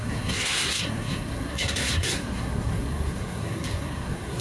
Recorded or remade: remade